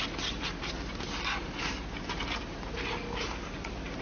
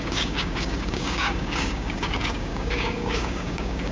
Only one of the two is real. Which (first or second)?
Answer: first